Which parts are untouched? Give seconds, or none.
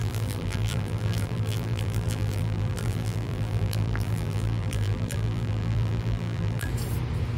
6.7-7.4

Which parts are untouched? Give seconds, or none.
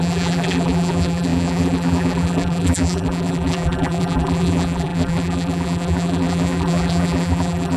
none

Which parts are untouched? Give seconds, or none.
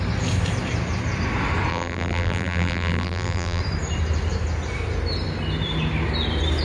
0.0-1.7; 3.6-6.6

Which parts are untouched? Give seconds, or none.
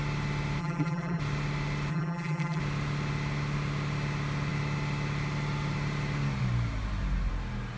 0.0-0.6; 1.2-1.9; 2.6-7.8